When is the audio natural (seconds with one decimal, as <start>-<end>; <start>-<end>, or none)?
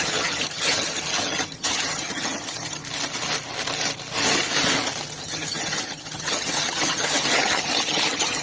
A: 2.8-5.2